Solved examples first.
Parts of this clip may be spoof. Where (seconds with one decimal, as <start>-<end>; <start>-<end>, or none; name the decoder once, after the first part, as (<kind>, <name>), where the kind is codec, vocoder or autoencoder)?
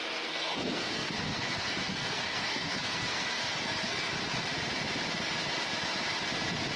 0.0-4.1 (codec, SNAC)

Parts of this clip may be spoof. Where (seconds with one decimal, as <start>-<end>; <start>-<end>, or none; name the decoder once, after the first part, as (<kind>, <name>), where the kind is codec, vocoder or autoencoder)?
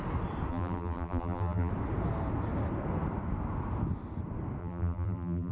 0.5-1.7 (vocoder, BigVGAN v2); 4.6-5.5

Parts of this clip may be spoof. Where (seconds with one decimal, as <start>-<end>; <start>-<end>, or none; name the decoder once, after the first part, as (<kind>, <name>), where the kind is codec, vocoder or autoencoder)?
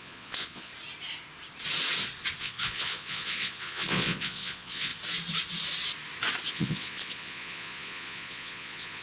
0.0-0.7 (vocoder, Vocos); 2.4-4.9; 6.5-9.0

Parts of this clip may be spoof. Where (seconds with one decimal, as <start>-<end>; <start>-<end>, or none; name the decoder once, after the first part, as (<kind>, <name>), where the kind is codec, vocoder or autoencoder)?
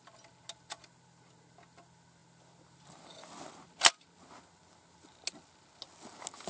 none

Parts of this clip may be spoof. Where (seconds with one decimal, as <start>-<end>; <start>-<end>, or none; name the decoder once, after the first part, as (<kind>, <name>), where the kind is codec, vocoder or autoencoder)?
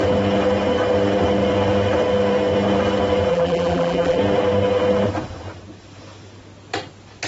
3.3-4.2 (vocoder, BigVGAN v2)